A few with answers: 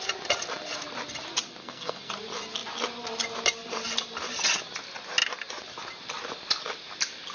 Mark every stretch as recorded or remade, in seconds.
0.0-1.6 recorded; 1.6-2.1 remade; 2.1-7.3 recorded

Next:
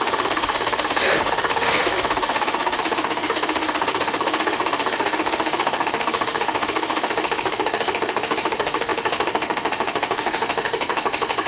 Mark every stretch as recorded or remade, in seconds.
0.0-11.5 remade

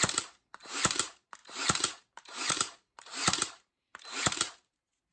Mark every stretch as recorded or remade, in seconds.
0.0-3.9 remade; 3.9-5.1 recorded

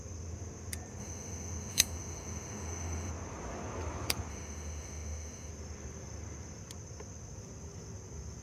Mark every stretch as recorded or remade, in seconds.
0.0-1.0 recorded; 1.0-3.1 remade; 3.1-4.3 recorded; 4.3-5.5 remade; 5.5-8.4 recorded

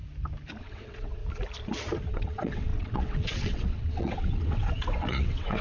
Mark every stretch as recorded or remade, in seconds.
0.0-0.6 recorded; 0.6-1.2 remade; 1.2-2.1 recorded; 2.1-5.6 remade

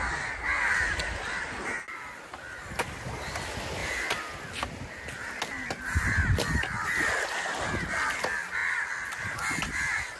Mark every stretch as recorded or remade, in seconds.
0.0-10.2 recorded

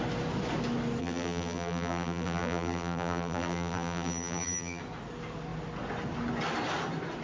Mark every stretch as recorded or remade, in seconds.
0.0-1.0 recorded; 1.0-4.8 remade; 4.8-7.2 recorded